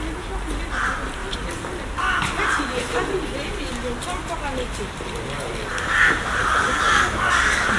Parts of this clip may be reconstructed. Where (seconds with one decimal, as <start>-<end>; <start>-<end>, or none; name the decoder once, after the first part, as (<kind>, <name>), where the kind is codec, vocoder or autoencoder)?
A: 1.2-2.3 (vocoder, BigVGAN v2); 5.7-6.4